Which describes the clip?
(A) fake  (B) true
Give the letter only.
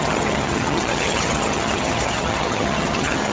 A